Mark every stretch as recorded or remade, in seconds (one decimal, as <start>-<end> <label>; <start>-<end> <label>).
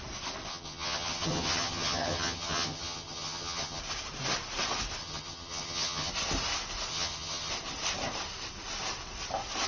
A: 0.0-0.5 recorded; 0.5-3.8 remade; 3.8-5.0 recorded; 5.0-6.1 remade; 6.1-6.9 recorded; 6.9-7.5 remade; 7.5-9.7 recorded